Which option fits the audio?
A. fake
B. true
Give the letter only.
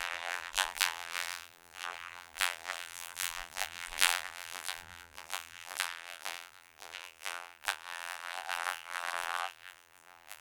A